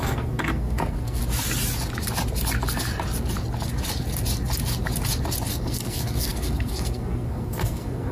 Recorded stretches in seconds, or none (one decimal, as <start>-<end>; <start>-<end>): 1.2-5.5